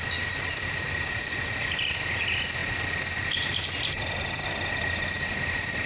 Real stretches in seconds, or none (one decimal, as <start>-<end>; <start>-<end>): 0.0-5.9